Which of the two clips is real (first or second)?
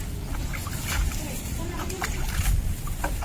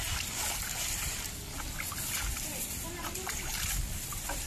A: second